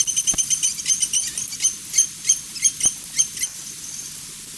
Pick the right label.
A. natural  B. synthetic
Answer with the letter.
A